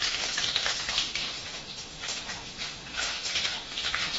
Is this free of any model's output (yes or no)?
no